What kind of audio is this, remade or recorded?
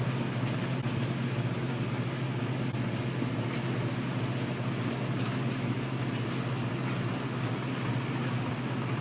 recorded